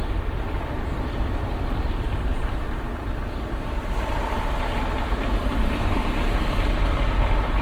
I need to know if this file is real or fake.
fake